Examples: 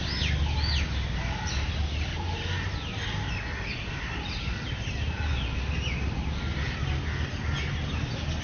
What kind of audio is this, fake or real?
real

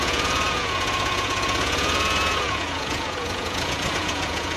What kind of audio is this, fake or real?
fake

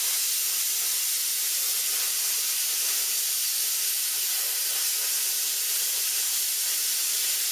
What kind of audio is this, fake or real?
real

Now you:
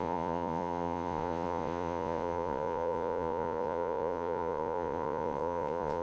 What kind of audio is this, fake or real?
fake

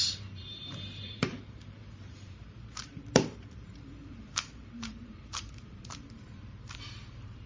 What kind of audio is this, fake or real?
fake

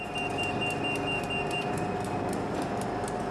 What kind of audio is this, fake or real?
real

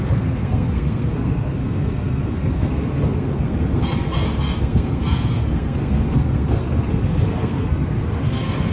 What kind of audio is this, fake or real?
fake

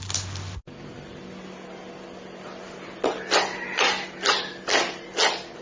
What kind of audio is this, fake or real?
real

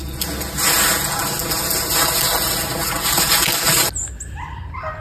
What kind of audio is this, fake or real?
real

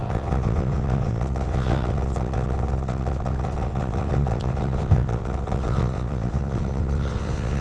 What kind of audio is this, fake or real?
fake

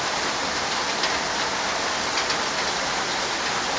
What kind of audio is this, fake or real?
real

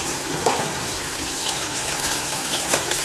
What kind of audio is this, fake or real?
fake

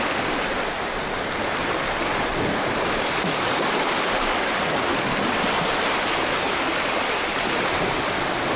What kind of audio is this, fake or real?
real